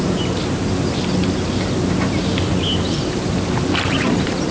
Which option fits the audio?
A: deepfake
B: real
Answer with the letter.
B